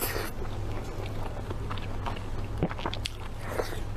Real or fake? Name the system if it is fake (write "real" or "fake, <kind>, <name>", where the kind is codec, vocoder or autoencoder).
real